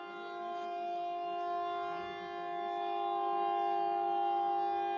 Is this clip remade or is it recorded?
recorded